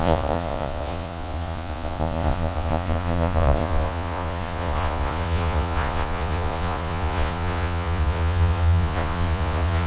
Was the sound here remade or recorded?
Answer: remade